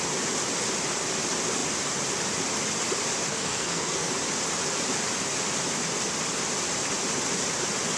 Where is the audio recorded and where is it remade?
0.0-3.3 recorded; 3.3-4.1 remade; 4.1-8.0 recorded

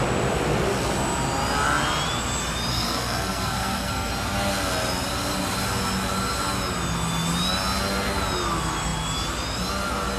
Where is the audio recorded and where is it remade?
0.0-2.7 recorded; 2.7-4.1 remade; 4.1-10.2 recorded

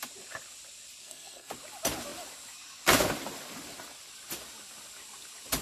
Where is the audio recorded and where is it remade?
0.0-1.0 recorded; 1.0-1.5 remade; 1.5-5.6 recorded